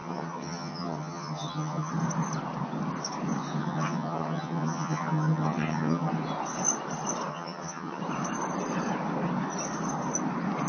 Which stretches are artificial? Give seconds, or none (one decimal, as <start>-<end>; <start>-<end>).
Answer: 0.0-1.9; 3.6-6.1; 7.3-8.0